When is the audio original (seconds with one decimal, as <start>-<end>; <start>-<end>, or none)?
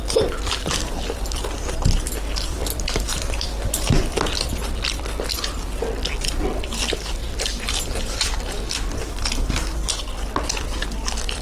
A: 0.0-3.1; 3.7-7.2; 8.3-11.4